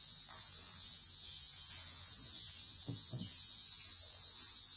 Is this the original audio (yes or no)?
no